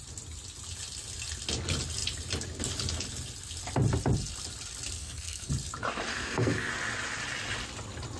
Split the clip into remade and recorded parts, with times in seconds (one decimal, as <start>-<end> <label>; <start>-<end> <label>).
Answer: 0.0-5.0 recorded; 5.0-5.5 remade; 5.5-6.1 recorded; 6.1-6.7 remade; 6.7-8.2 recorded